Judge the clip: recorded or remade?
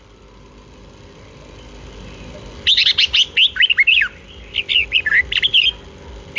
recorded